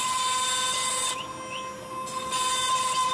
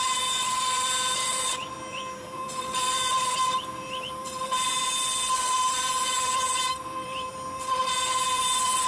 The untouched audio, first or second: first